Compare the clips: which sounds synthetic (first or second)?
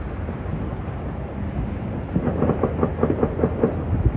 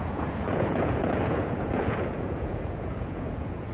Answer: second